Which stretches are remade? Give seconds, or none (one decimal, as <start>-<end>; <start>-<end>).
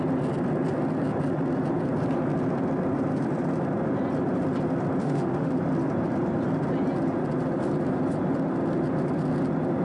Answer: 5.0-5.5